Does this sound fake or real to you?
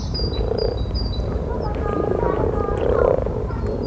fake